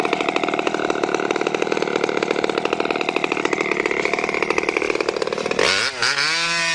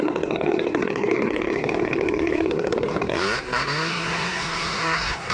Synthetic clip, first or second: second